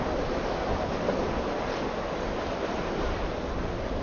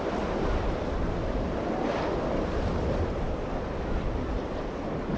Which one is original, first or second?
first